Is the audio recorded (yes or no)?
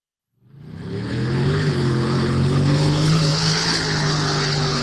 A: no